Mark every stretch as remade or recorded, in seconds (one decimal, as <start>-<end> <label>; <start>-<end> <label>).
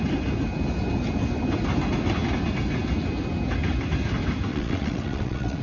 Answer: 0.0-4.5 recorded; 4.5-5.6 remade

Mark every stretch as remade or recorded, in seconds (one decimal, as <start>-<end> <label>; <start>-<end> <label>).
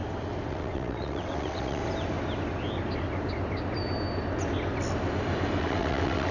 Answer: 0.0-0.5 recorded; 0.5-1.8 remade; 1.8-5.6 recorded; 5.6-6.3 remade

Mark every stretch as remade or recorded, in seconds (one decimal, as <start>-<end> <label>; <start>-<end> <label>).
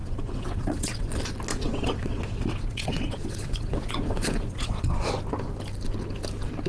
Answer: 0.0-1.1 remade; 1.1-1.5 recorded; 1.5-5.1 remade; 5.1-6.7 recorded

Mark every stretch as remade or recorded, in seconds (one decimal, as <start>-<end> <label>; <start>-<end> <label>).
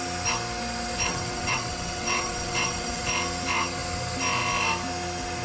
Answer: 0.0-1.1 recorded; 1.1-3.0 remade; 3.0-5.4 recorded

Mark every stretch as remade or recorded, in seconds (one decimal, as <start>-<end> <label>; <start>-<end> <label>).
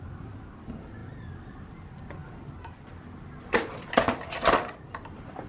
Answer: 0.0-5.5 recorded